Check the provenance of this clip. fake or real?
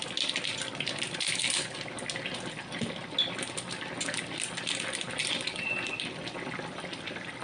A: real